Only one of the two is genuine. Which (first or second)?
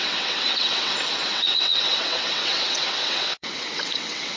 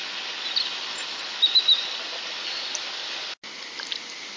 second